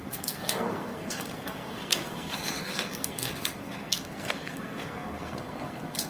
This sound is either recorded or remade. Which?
remade